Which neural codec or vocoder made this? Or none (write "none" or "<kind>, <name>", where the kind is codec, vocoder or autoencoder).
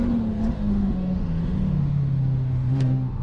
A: autoencoder, DAC-VAE